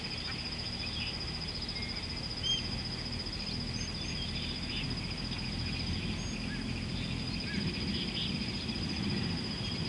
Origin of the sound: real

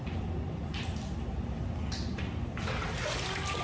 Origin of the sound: real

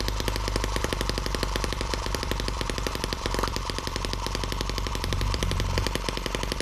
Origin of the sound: fake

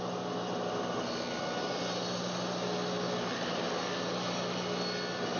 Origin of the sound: real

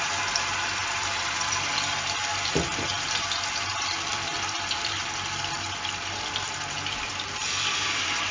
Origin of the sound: fake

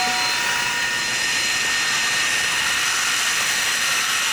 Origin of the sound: real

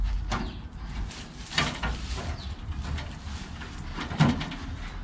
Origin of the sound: real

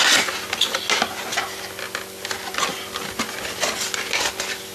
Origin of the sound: real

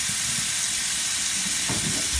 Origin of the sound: real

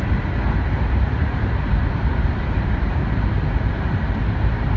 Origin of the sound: fake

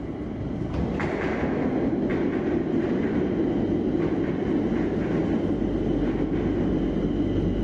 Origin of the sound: real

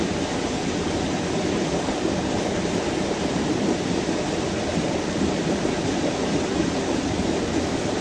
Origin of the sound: fake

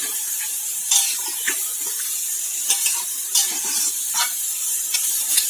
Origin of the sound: fake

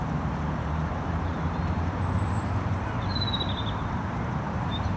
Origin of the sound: fake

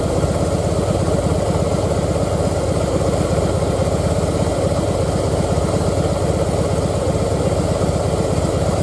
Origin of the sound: real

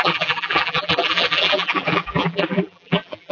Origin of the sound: fake